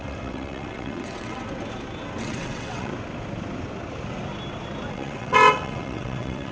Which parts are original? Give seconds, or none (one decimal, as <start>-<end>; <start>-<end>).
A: 1.4-2.2; 2.9-4.9

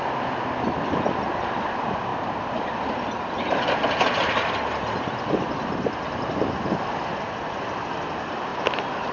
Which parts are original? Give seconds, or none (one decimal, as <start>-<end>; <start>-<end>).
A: 0.0-9.1